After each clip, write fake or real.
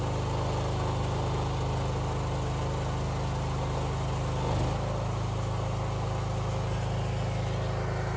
real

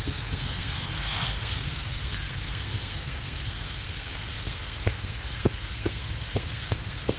fake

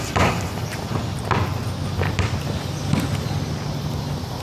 real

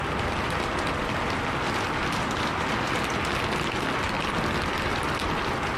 real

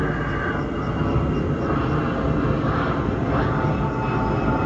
real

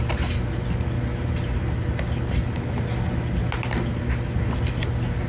real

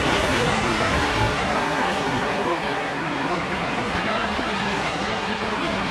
fake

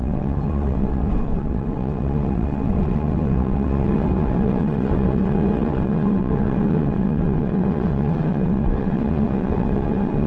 fake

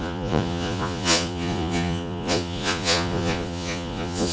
fake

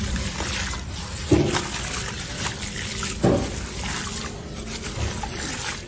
real